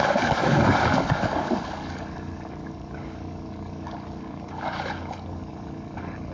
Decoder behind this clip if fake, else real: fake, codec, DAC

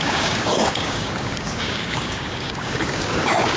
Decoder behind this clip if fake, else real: fake, codec, DAC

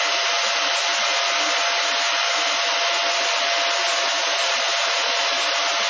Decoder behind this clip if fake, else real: real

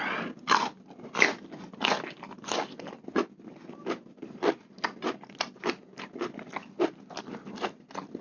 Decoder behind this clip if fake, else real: real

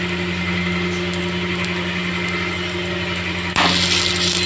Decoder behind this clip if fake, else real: real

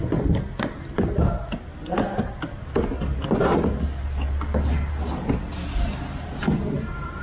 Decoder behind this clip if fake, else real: real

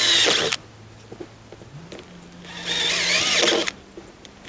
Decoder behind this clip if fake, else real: real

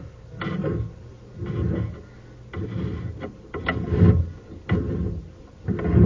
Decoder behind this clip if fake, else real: real